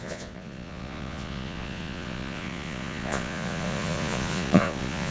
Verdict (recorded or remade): remade